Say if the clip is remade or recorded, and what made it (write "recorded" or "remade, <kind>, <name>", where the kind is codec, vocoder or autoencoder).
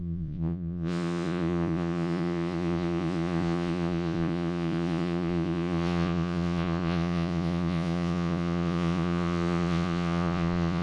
remade, vocoder, Vocos